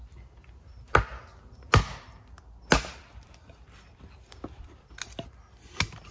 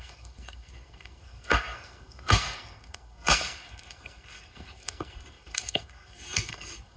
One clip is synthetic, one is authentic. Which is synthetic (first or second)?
second